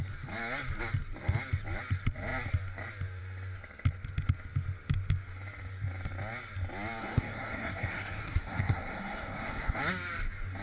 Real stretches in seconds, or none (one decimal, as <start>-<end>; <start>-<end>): 0.0-7.0; 9.8-10.6